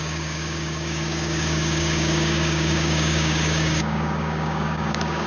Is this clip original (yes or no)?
no